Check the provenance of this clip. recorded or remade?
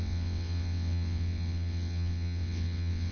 remade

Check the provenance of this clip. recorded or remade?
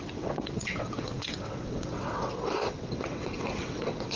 remade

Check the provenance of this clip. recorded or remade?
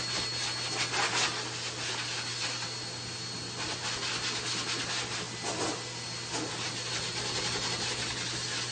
recorded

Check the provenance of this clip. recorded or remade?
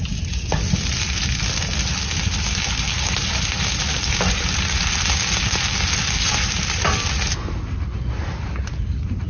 recorded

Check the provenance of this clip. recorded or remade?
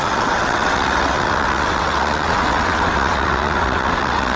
remade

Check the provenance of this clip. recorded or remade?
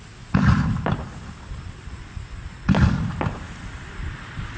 recorded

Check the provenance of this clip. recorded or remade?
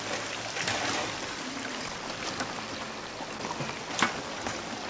recorded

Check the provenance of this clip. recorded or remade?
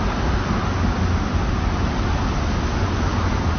recorded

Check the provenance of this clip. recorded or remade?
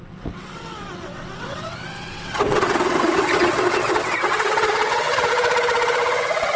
remade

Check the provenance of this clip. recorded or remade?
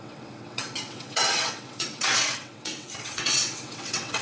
remade